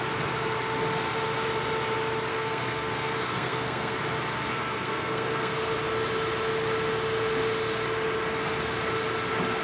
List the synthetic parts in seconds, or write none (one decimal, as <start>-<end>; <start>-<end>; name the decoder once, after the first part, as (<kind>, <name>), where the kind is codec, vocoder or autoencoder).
2.3-4.0 (codec, SNAC); 4.5-5.7